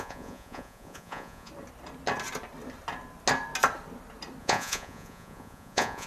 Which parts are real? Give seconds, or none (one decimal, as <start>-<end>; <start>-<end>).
1.5-4.4